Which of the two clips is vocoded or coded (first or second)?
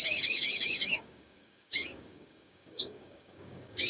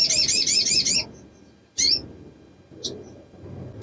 first